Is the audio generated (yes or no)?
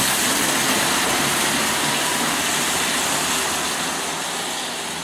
no